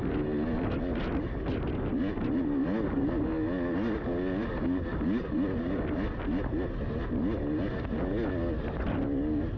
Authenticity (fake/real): real